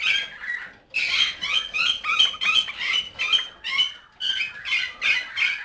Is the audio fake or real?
real